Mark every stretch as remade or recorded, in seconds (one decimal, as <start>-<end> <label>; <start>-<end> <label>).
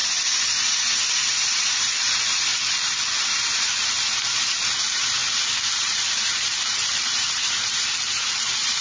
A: 0.0-0.8 recorded; 0.8-2.5 remade; 2.5-3.1 recorded; 3.1-5.2 remade; 5.2-5.7 recorded; 5.7-8.8 remade